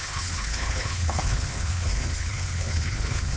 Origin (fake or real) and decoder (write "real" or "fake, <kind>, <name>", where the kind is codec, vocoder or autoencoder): fake, codec, HILCodec